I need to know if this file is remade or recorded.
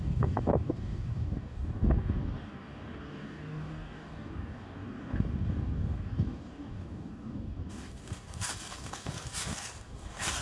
remade